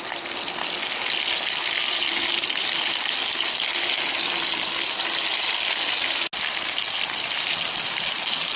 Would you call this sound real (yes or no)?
yes